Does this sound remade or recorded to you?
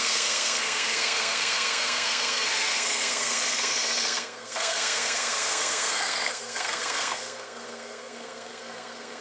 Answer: remade